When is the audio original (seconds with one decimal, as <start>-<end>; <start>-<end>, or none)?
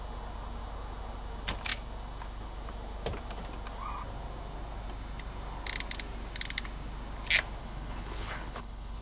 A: 0.0-7.6